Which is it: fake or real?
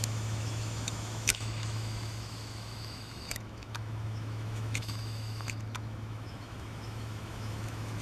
fake